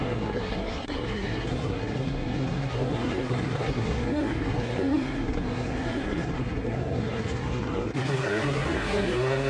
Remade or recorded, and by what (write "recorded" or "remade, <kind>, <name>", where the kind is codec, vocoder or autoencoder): remade, codec, SNAC